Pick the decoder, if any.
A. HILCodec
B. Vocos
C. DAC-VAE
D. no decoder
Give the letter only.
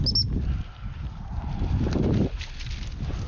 D